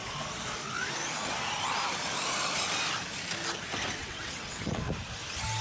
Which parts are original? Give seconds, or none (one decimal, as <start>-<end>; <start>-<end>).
0.0-4.0; 4.9-5.6